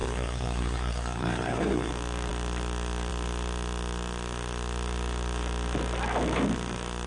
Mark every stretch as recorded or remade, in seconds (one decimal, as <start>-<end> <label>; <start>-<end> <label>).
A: 0.0-1.9 remade; 1.9-7.1 recorded